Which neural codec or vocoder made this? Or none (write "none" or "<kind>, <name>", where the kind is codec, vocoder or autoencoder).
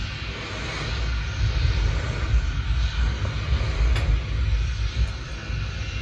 none